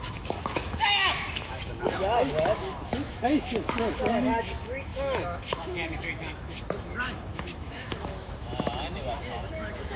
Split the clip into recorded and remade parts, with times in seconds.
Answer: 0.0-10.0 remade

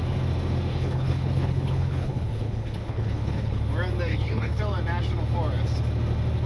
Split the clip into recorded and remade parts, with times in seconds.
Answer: 0.0-0.7 recorded; 0.7-3.6 remade; 3.6-4.1 recorded; 4.1-4.6 remade; 4.6-6.5 recorded

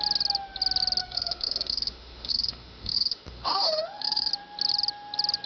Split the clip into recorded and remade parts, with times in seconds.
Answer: 0.0-1.0 recorded; 1.0-4.3 remade; 4.3-5.5 recorded

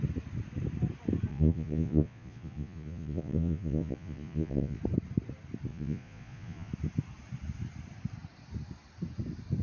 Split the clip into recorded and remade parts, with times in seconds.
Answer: 0.0-1.3 recorded; 1.3-4.8 remade; 4.8-5.7 recorded; 5.7-6.7 remade; 6.7-9.6 recorded